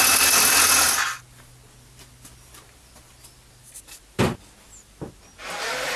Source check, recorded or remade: recorded